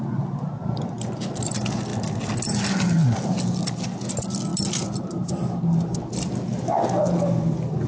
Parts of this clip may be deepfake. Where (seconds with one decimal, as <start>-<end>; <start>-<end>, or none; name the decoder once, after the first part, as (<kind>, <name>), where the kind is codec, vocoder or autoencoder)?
none